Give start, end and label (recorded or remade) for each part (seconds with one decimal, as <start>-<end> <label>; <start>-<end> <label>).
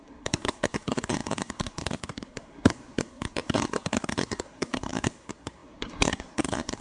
0.0-6.8 remade